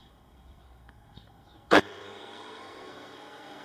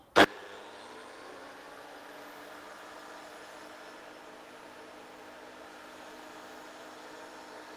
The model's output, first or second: first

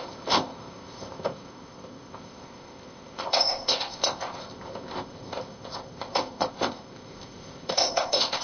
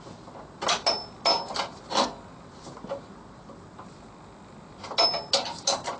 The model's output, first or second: first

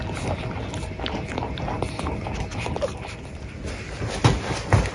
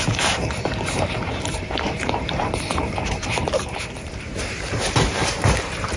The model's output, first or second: second